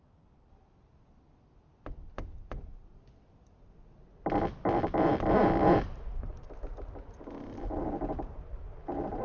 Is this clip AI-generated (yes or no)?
no